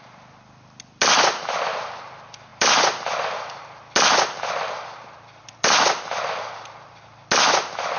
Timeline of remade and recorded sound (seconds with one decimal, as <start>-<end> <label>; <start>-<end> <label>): 0.0-8.0 recorded